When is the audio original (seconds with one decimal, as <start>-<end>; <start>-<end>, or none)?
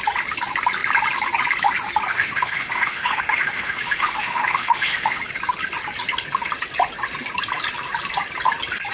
0.0-2.1; 5.2-8.9